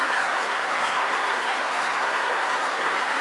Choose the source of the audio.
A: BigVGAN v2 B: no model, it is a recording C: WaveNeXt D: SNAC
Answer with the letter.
D